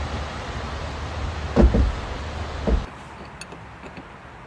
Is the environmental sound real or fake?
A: real